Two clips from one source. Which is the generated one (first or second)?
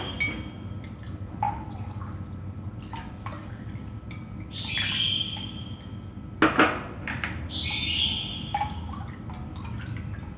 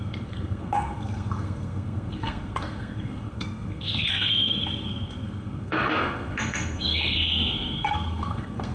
second